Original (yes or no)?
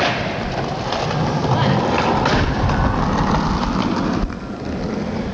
yes